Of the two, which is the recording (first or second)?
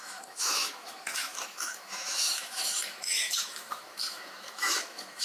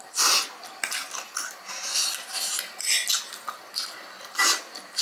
second